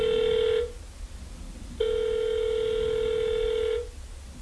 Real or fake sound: real